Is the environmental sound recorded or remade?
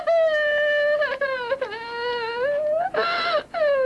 recorded